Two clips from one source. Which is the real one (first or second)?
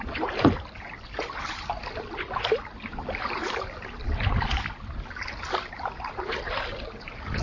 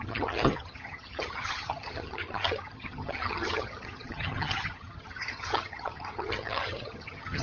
first